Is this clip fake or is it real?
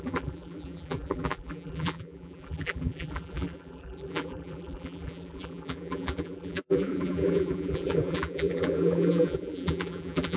fake